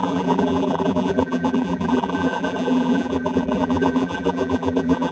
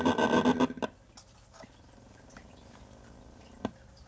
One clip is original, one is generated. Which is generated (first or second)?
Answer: first